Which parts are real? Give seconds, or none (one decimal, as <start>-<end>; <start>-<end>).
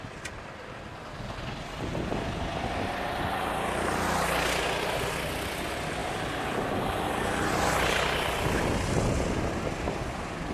0.0-10.5